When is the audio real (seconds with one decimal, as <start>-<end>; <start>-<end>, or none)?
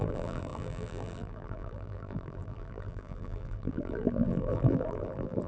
none